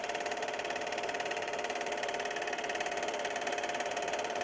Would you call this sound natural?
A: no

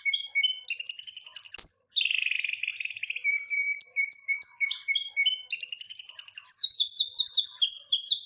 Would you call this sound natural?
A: yes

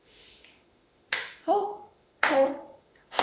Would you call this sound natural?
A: no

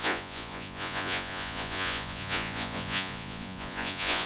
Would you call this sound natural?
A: no